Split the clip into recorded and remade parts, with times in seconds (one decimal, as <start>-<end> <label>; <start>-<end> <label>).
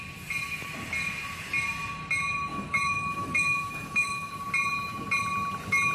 0.0-2.5 recorded; 2.5-4.3 remade; 4.3-5.9 recorded